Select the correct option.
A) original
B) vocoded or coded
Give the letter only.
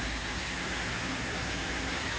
B